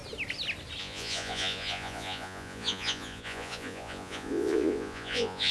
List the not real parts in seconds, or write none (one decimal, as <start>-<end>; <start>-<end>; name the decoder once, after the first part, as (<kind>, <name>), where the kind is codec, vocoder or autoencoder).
0.8-5.5 (vocoder, Vocos)